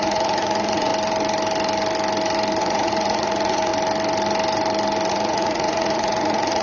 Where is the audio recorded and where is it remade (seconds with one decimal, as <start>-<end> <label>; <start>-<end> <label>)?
0.0-0.9 remade; 0.9-2.6 recorded; 2.6-3.7 remade; 3.7-5.1 recorded; 5.1-6.6 remade